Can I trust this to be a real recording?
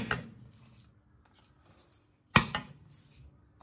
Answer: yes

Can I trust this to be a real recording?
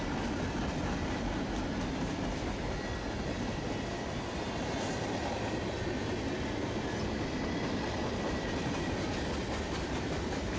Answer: yes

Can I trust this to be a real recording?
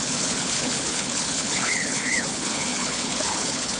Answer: no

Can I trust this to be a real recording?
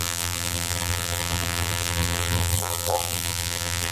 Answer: no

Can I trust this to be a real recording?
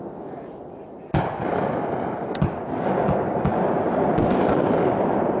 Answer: yes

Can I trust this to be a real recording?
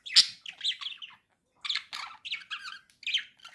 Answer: yes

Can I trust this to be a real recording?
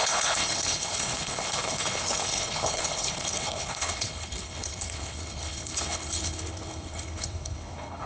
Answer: no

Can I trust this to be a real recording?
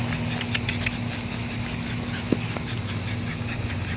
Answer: yes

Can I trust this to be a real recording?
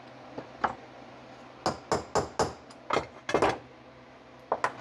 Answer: yes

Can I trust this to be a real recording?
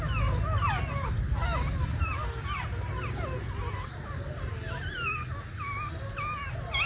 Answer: yes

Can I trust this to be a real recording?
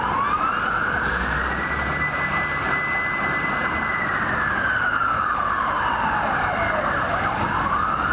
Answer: yes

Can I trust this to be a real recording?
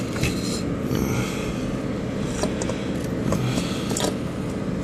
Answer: yes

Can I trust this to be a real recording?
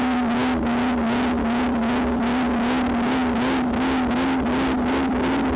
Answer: yes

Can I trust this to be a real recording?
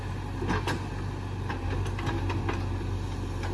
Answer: yes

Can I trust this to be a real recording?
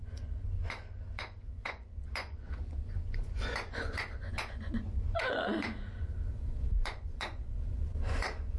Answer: no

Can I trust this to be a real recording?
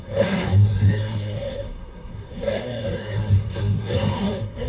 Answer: no